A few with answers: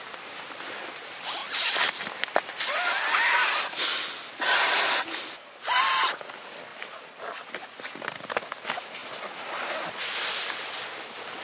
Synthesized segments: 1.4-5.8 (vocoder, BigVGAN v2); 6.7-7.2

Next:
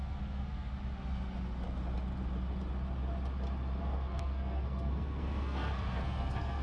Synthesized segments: 0.0-0.7 (codec, SNAC); 3.8-6.6

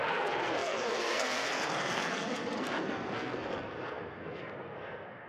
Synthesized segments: 0.0-5.3 (codec, SNAC)

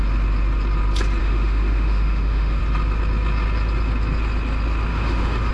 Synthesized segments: 1.2-2.6 (autoencoder, DAC-VAE); 4.9-5.5